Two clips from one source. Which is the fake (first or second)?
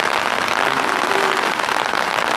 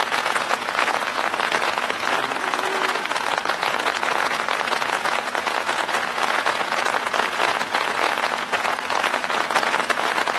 second